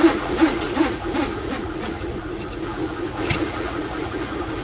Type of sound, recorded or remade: remade